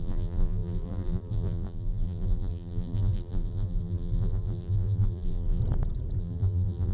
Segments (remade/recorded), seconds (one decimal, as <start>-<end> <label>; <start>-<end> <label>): 0.0-5.6 remade; 5.6-6.2 recorded; 6.2-6.9 remade

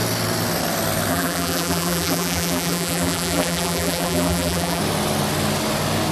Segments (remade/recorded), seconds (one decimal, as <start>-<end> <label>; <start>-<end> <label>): 0.0-1.1 recorded; 1.1-4.8 remade; 4.8-6.1 recorded

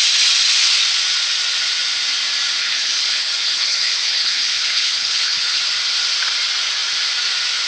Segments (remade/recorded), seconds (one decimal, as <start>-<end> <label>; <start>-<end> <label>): 0.0-2.6 recorded; 2.6-5.6 remade; 5.6-7.7 recorded

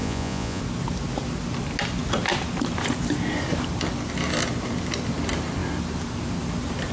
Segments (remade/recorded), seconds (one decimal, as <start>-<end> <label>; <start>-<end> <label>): 0.0-0.6 remade; 0.6-6.9 recorded